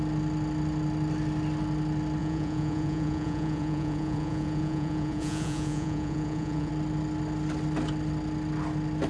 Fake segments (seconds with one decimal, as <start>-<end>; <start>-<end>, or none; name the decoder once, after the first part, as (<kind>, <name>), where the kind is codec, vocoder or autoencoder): 2.2-6.7 (vocoder, Vocos)